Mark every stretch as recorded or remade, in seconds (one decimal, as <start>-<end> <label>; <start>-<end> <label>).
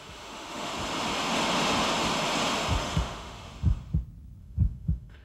0.0-0.7 remade; 0.7-2.8 recorded; 2.8-3.5 remade; 3.5-4.4 recorded; 4.4-5.2 remade